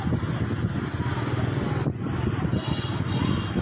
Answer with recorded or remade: recorded